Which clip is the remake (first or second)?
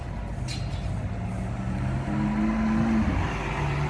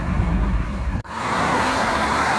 second